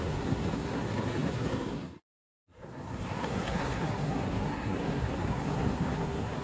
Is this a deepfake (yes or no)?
yes